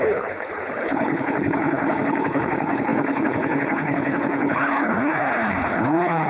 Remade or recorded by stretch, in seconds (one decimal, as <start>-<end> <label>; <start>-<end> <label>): 0.0-6.3 remade